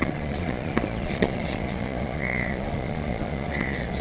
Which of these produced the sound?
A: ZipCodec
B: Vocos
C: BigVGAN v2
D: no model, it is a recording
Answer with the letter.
B